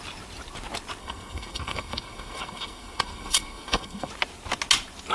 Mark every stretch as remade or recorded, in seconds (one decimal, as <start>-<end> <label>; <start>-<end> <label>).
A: 0.0-1.0 recorded; 1.0-4.1 remade; 4.1-5.1 recorded